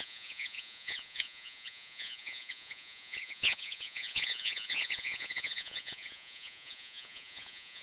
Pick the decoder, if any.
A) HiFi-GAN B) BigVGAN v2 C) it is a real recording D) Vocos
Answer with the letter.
D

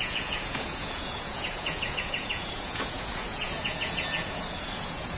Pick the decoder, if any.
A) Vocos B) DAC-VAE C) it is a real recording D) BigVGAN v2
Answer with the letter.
A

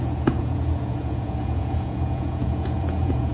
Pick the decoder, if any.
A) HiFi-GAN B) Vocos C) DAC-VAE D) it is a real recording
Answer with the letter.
B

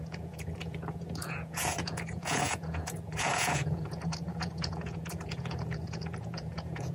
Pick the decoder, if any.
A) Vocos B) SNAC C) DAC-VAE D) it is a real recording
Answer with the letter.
A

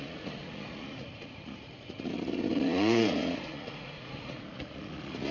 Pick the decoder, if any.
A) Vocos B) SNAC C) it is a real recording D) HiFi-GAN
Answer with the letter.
A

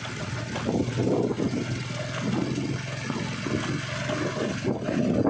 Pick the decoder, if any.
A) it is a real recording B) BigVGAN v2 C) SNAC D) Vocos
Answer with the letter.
A